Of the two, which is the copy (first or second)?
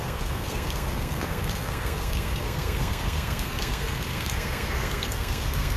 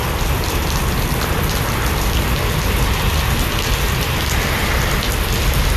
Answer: first